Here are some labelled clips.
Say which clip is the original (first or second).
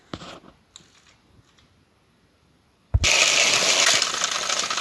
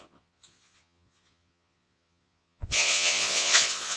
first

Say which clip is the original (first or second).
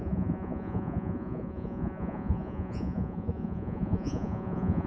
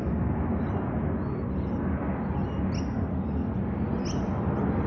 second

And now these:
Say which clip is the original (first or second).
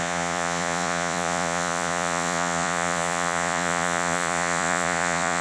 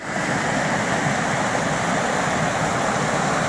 second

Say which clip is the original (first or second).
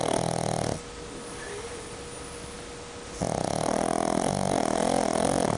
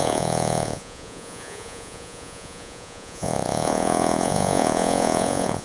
first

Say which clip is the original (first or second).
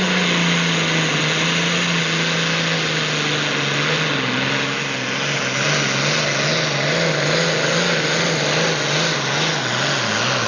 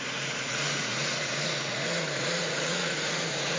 first